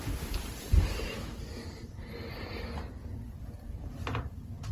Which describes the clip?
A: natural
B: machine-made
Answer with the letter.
B